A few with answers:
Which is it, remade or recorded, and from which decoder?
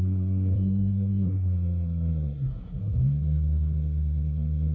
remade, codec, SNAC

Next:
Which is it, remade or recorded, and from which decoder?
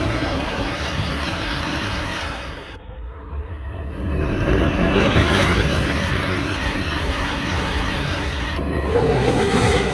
remade, codec, SNAC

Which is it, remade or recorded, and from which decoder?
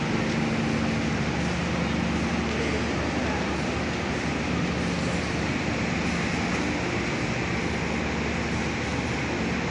recorded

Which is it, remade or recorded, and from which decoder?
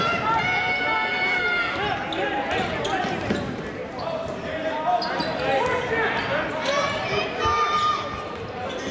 recorded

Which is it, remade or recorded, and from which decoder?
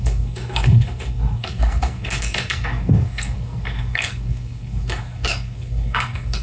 remade, codec, SNAC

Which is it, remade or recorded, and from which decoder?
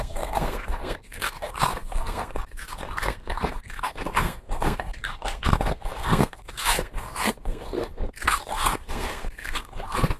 remade, codec, SNAC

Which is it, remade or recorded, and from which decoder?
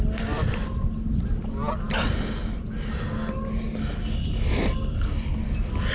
recorded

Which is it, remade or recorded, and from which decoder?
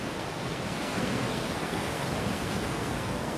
remade, codec, SNAC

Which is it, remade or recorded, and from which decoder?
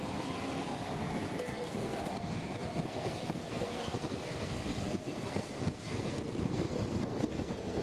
remade, codec, SNAC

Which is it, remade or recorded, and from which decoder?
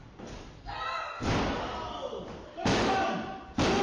recorded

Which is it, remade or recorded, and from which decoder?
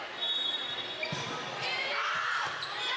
recorded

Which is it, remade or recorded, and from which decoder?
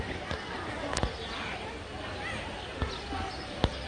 recorded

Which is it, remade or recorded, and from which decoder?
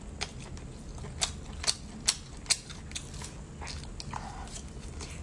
recorded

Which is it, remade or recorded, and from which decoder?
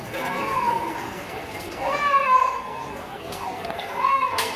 remade, codec, SNAC